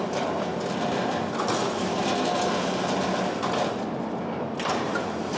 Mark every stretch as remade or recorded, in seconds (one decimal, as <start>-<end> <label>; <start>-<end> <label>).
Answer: 0.0-0.5 remade; 0.5-3.7 recorded; 3.7-5.4 remade